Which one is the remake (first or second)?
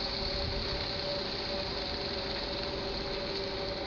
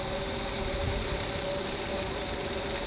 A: second